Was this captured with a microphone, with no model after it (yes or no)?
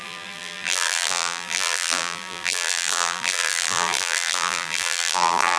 no